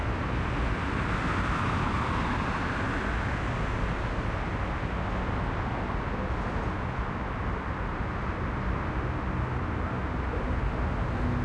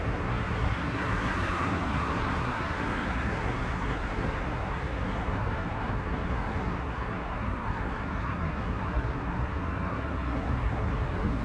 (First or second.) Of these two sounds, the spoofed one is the second